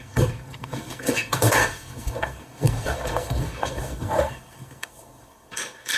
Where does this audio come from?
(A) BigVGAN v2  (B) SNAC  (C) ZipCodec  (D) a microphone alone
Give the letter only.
B